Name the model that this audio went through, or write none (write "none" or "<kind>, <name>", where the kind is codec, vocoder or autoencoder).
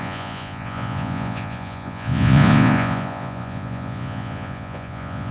vocoder, Vocos